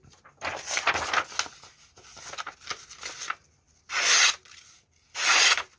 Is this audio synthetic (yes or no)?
no